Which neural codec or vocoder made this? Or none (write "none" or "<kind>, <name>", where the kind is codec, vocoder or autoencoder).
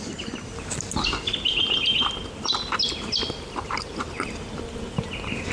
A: none